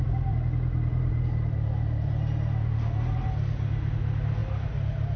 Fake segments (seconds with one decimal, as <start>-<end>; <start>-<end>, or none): none